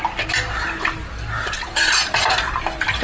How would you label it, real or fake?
real